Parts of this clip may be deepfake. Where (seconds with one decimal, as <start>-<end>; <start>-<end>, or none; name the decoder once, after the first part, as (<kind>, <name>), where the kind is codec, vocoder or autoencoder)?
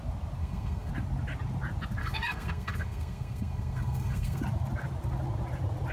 0.4-0.9 (codec, SNAC); 2.0-4.4